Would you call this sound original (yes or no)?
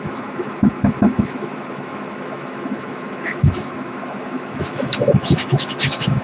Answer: no